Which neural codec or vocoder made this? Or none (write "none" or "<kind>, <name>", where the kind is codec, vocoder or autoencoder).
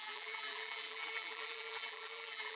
vocoder, BigVGAN v2